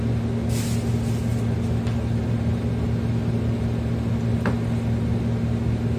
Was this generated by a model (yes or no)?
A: no